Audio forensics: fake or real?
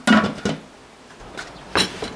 real